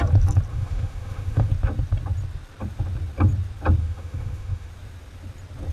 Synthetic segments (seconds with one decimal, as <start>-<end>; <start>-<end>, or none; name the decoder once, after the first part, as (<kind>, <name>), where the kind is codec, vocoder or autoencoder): 0.5-1.5 (autoencoder, DAC-VAE); 3.8-4.7